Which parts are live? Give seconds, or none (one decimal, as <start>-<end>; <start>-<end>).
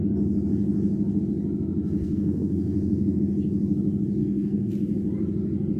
0.0-2.0; 3.2-4.2; 4.7-5.8